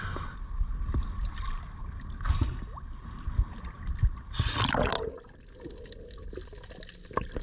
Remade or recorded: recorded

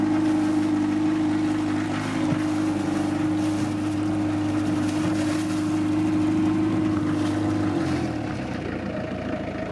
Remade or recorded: recorded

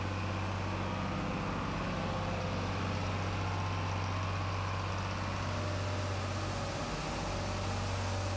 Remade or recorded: recorded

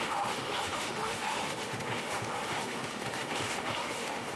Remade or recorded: remade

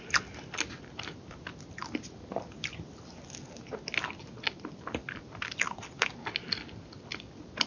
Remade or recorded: recorded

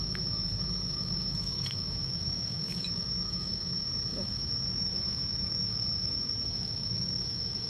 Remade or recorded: remade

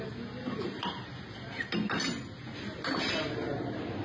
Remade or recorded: recorded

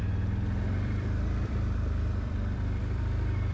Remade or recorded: remade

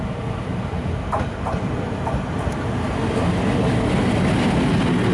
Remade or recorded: recorded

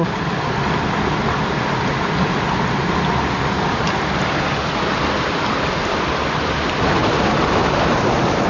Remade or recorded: recorded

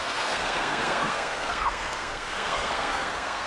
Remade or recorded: remade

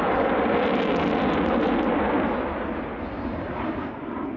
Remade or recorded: recorded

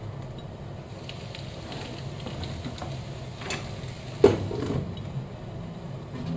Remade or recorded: recorded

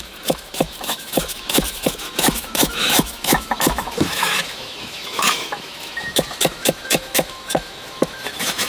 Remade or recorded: remade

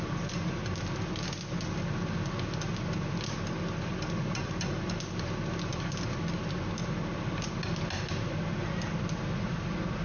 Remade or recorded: recorded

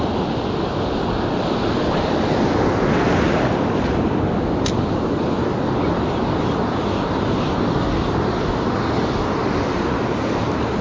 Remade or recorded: recorded